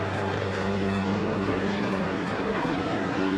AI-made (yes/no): yes